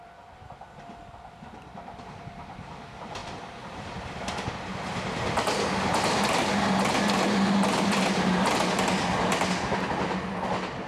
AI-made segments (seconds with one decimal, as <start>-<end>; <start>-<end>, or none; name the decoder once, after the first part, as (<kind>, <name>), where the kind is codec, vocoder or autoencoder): none